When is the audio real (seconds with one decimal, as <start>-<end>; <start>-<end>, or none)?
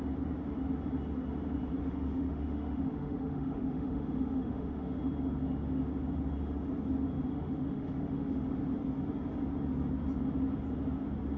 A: 0.0-1.8; 5.0-7.3; 8.5-11.4